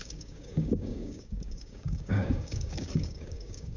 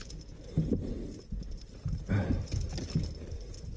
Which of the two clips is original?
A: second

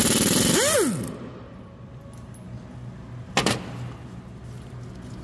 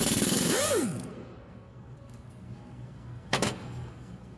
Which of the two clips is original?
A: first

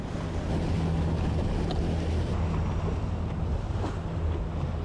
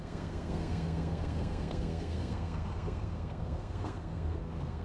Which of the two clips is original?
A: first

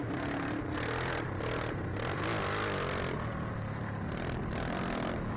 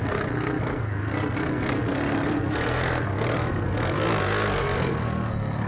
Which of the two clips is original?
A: first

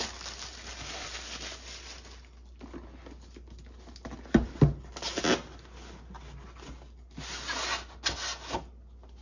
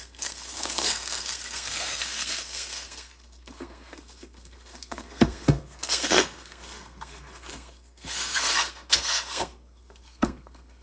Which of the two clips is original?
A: first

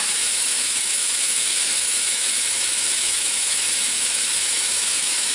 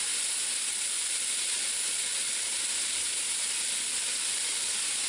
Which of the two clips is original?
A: second